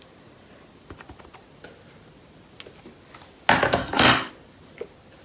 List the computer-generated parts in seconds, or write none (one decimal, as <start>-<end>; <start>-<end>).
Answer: 3.8-4.3